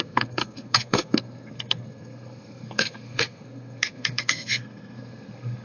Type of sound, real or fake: fake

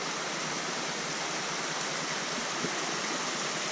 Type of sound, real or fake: real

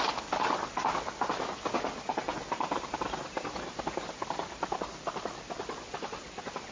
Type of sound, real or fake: real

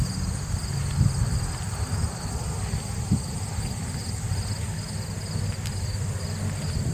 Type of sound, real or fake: real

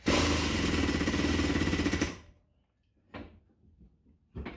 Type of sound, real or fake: real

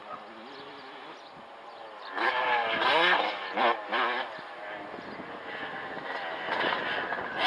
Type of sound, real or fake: real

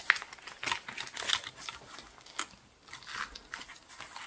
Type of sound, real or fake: real